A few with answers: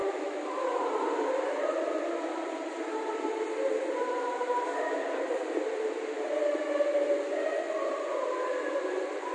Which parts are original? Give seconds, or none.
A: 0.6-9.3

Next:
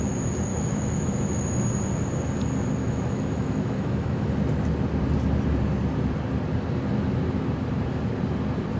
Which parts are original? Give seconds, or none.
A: 0.0-0.5; 1.4-2.8; 4.3-8.8

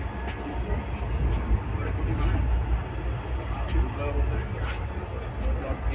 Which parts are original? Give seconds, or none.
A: 0.0-5.9

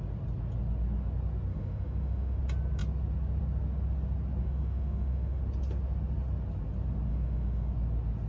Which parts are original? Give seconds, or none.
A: 0.0-1.5; 2.4-4.4; 5.4-7.1; 7.7-8.3

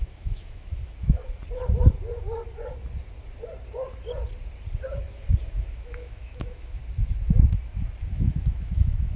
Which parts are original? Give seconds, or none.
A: 1.2-5.5; 6.8-8.1

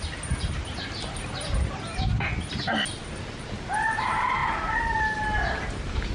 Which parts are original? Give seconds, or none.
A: 0.0-6.1